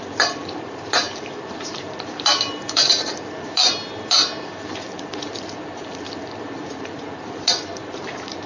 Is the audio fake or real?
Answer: fake